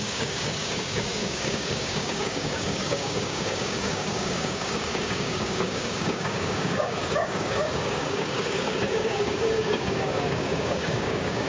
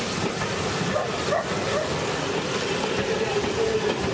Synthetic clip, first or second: first